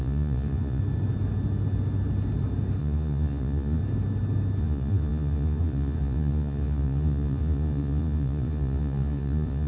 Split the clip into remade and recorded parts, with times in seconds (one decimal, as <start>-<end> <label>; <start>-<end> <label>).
0.0-0.8 remade; 0.8-2.8 recorded; 2.8-3.8 remade; 3.8-4.6 recorded; 4.6-9.7 remade